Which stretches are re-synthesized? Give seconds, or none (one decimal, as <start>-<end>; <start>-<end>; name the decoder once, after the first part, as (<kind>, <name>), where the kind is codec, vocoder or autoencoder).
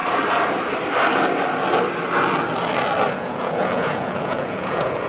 3.1-5.1 (vocoder, Vocos)